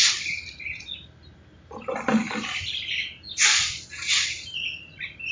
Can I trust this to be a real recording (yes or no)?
yes